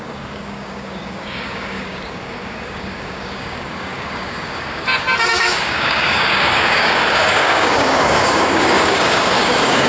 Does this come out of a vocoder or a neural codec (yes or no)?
yes